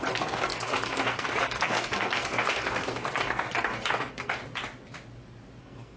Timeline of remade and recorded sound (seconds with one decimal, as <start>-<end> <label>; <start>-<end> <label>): 0.0-4.4 remade; 4.4-5.6 recorded; 5.6-6.0 remade